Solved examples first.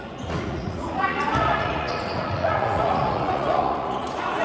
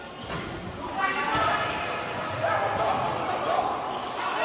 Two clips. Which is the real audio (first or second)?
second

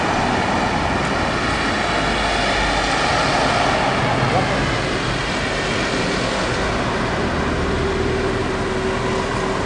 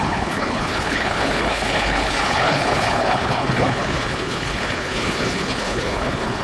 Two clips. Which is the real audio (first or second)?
first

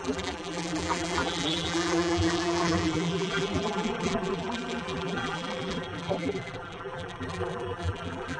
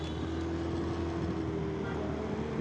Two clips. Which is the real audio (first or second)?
second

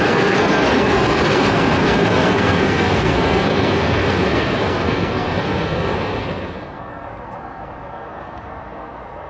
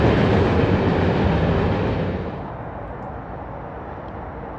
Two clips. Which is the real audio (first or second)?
second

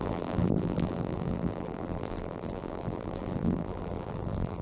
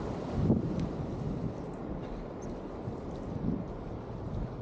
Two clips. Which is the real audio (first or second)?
second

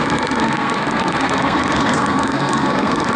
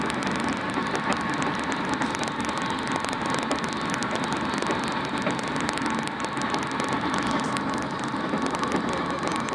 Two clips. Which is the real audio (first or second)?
second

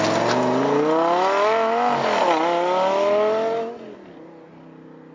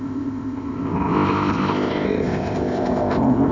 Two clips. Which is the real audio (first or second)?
first